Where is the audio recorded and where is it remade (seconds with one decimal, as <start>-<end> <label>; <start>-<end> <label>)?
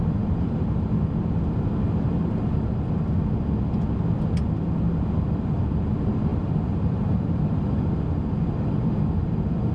0.0-6.3 recorded; 6.3-7.4 remade; 7.4-9.7 recorded